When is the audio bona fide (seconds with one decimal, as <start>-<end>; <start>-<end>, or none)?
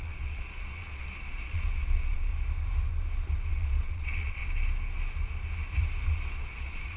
2.3-3.5; 4.4-6.3